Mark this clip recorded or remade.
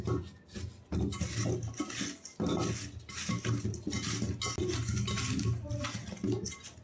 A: recorded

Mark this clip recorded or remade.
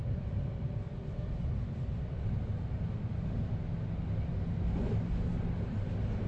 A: recorded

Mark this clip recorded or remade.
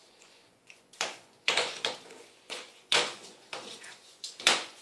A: remade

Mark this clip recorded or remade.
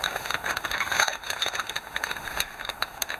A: remade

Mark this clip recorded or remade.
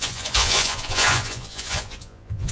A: remade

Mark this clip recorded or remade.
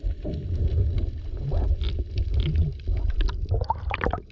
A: recorded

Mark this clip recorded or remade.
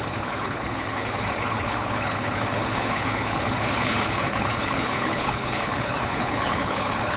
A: remade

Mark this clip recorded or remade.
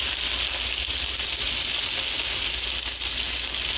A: recorded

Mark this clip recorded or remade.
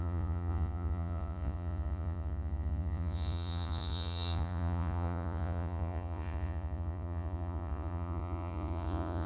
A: remade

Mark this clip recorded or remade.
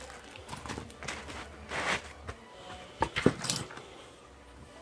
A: recorded